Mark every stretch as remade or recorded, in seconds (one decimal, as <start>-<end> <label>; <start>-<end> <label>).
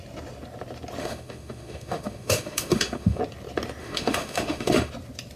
0.0-1.0 recorded; 1.0-3.2 remade; 3.2-3.8 recorded; 3.8-4.9 remade; 4.9-5.4 recorded